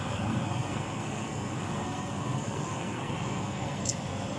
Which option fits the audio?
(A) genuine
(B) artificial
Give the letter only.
B